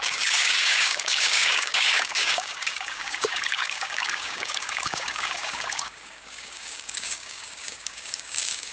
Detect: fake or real fake